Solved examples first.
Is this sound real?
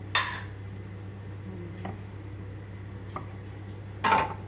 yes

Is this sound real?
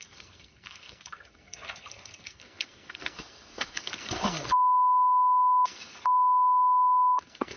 no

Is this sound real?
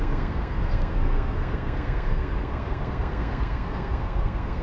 no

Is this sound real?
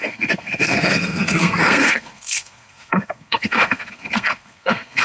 no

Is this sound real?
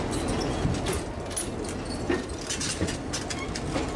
yes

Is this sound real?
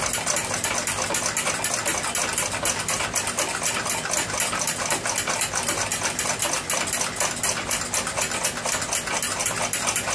yes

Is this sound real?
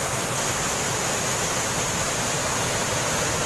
yes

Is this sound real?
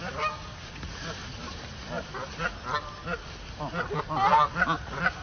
yes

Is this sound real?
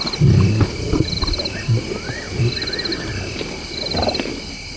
yes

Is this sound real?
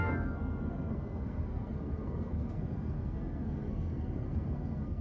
no